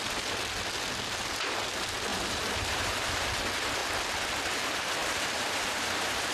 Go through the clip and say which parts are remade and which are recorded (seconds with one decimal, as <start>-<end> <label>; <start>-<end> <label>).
0.0-2.1 recorded; 2.1-3.0 remade; 3.0-5.0 recorded; 5.0-6.3 remade